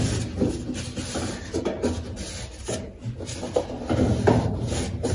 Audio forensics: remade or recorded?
recorded